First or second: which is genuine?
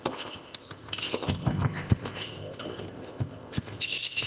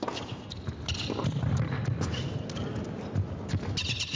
second